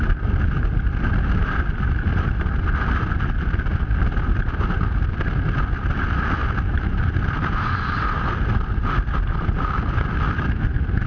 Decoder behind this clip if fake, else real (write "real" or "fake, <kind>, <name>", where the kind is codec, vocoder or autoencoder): real